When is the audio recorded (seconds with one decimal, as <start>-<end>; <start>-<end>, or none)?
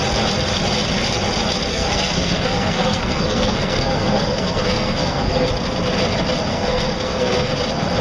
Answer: 0.0-1.7; 5.5-6.5; 7.5-8.0